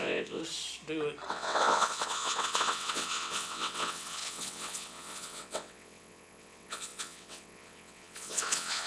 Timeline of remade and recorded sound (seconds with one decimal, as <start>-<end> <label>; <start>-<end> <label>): 0.0-0.4 remade; 0.4-1.3 recorded; 1.3-8.9 remade